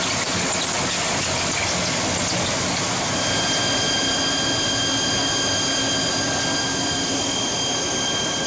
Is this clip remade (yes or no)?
no